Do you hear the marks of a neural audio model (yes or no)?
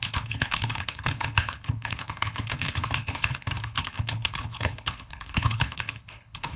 yes